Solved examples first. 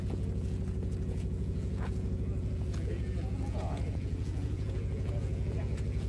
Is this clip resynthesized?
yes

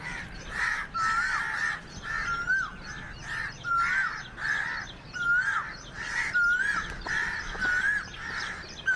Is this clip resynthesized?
no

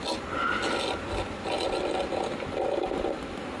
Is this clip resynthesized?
no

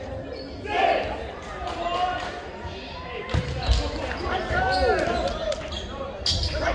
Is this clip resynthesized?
no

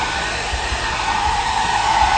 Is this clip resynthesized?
no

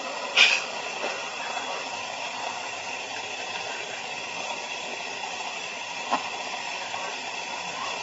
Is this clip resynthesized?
no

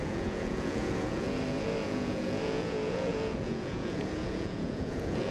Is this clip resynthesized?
yes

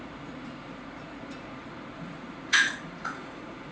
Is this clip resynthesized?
yes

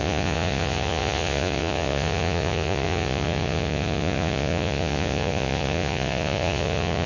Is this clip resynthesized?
yes